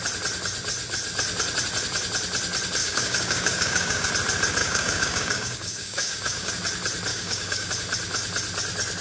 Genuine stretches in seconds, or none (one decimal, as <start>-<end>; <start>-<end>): 0.0-2.8; 4.1-4.6; 6.5-7.1; 7.7-9.0